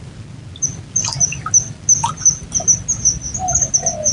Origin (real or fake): real